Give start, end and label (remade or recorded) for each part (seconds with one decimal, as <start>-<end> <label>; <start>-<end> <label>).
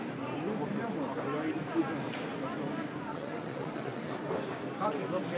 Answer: 0.0-3.1 recorded; 3.1-4.1 remade; 4.1-5.4 recorded